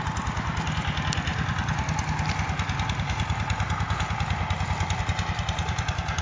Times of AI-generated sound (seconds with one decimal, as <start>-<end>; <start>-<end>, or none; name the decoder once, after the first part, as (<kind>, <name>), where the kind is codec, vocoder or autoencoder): none